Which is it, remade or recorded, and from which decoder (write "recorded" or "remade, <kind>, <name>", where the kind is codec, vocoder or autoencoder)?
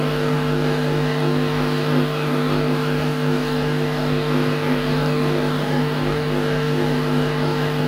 remade, codec, DAC